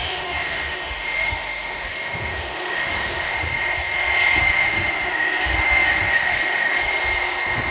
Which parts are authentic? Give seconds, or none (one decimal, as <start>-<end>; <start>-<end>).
3.6-4.4; 7.0-7.7